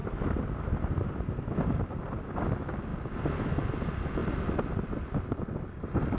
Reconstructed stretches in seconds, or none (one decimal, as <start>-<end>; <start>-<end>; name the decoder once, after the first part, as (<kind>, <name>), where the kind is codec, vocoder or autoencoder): 0.0-1.8 (vocoder, BigVGAN v2); 2.9-3.4; 4.2-5.7